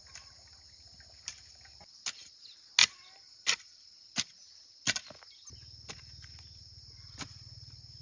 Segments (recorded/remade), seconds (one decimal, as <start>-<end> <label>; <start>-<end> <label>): 0.0-8.0 recorded